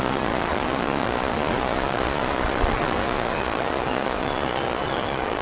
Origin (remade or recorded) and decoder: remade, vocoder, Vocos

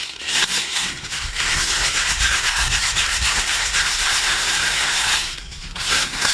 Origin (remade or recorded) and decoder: remade, codec, SNAC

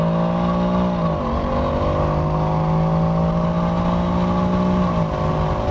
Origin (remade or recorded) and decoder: recorded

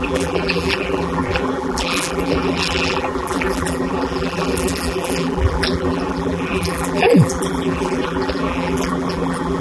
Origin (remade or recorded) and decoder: remade, vocoder, BigVGAN v2